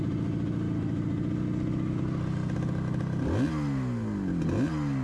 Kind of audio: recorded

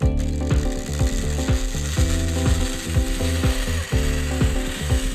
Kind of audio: recorded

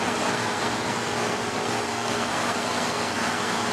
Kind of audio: remade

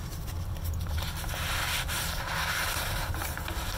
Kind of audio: remade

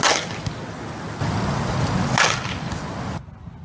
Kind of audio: recorded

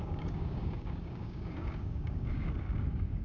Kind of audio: remade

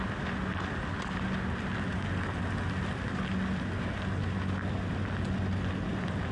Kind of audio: recorded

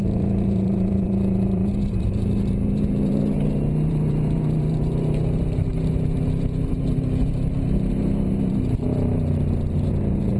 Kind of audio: remade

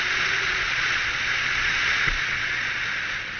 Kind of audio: remade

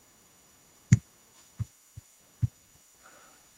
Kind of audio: remade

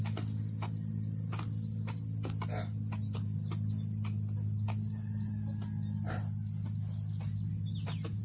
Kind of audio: recorded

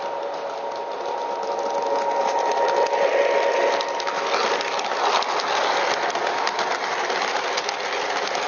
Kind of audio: recorded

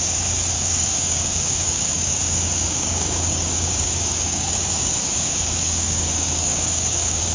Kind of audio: remade